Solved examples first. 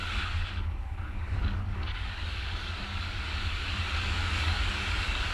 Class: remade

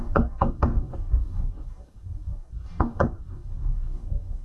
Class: remade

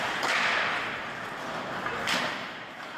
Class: recorded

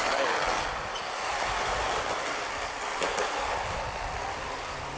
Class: recorded